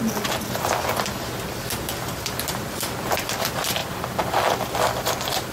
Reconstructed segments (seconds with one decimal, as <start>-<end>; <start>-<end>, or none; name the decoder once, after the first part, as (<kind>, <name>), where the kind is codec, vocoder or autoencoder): none